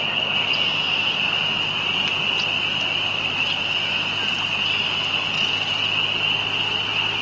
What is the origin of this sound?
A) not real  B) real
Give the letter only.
B